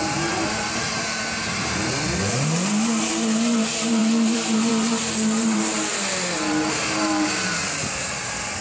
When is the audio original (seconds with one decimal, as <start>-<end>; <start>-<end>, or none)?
none